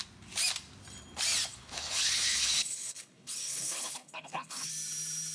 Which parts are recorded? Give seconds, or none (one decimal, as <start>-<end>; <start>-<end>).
0.0-1.5; 4.7-5.3